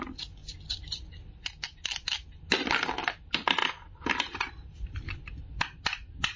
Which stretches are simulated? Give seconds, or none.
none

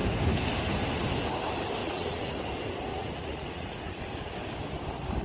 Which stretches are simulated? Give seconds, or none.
1.8-2.4 (vocoder, Vocos); 2.9-4.0

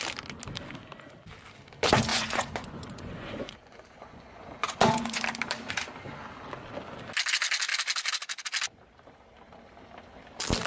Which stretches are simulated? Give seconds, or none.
2.1-5.2 (vocoder, Vocos)